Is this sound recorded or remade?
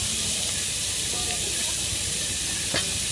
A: recorded